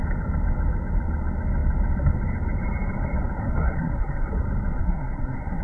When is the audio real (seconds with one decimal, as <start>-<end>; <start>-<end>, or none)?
0.0-3.4; 4.3-4.8